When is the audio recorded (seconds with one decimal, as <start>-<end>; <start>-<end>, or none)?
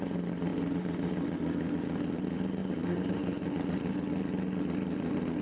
0.0-2.6; 3.2-5.4